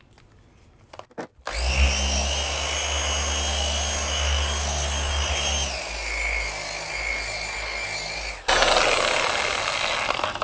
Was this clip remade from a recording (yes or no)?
no